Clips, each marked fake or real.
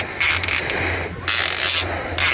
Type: real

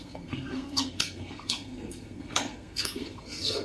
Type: fake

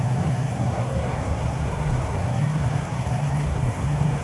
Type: fake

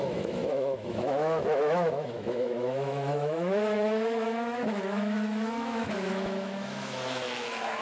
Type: fake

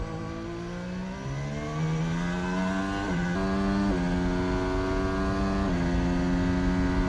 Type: real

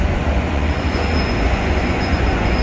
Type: fake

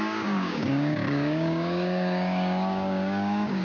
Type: fake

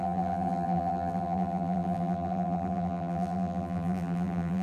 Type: fake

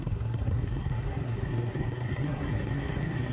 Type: fake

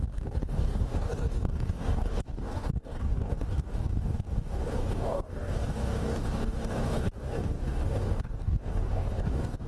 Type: fake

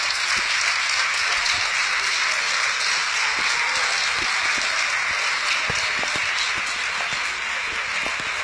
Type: real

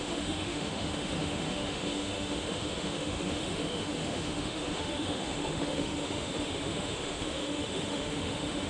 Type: fake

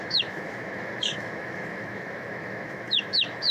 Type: fake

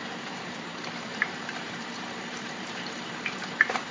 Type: fake